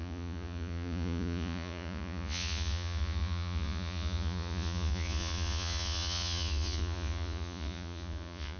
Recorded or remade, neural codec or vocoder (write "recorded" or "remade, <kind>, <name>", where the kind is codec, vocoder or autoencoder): remade, vocoder, Vocos